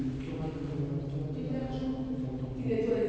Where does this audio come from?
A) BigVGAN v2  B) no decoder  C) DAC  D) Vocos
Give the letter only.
B